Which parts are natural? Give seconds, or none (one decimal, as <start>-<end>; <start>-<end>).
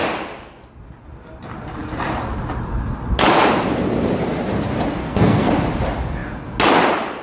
0.0-5.0; 5.5-7.2